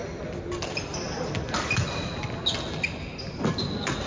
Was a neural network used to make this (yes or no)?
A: no